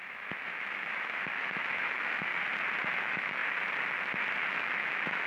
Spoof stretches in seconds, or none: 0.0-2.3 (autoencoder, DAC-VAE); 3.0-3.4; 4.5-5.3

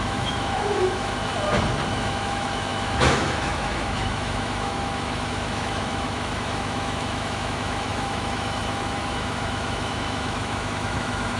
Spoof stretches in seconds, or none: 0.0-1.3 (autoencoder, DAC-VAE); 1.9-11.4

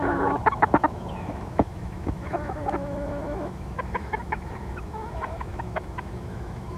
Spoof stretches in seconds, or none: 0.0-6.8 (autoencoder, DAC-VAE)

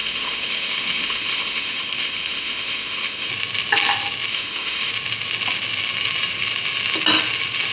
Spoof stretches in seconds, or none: 0.0-3.3 (autoencoder, DAC-VAE); 4.3-4.9